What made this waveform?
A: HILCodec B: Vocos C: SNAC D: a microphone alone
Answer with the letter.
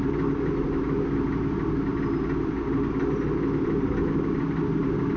D